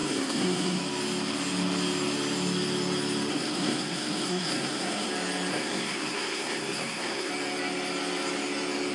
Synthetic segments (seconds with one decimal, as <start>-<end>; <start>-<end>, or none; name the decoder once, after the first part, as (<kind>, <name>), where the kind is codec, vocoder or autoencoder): 0.0-0.8 (codec, SNAC); 3.3-5.1; 5.5-7.3